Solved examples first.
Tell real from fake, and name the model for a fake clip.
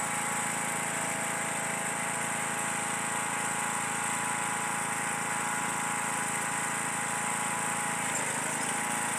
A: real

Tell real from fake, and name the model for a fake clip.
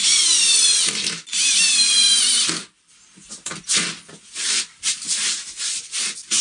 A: fake, vocoder, BigVGAN v2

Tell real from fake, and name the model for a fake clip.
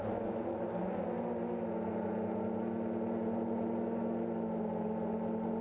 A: real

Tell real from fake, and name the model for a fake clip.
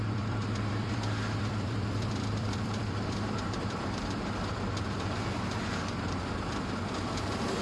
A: fake, vocoder, BigVGAN v2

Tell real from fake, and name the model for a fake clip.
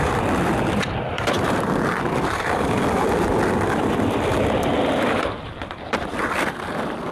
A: fake, vocoder, BigVGAN v2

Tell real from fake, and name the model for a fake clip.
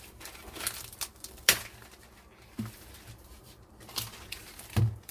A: fake, vocoder, BigVGAN v2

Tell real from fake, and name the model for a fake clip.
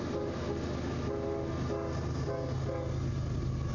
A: real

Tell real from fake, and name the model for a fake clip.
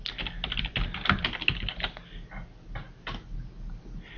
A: real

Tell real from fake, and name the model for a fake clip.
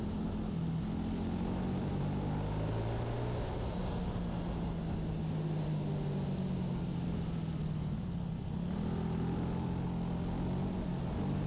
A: real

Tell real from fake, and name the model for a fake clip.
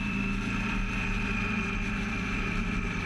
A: fake, vocoder, BigVGAN v2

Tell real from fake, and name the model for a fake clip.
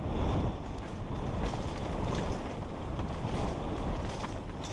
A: real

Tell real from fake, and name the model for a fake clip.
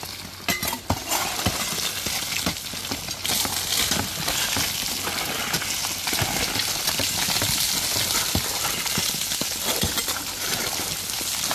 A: real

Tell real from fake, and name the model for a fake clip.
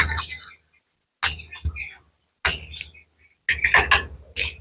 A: real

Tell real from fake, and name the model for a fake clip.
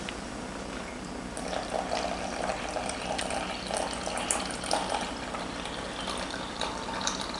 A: fake, vocoder, BigVGAN v2